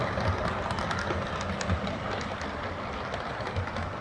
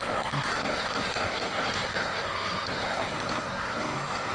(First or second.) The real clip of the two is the first